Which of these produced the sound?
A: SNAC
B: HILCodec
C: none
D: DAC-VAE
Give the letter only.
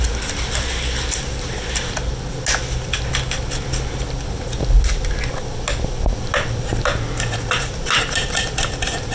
C